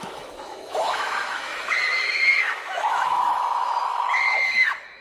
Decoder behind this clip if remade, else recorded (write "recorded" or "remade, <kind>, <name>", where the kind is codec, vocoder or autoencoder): remade, autoencoder, DAC-VAE